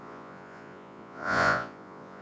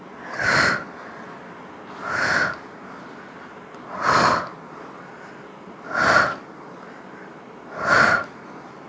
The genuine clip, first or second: second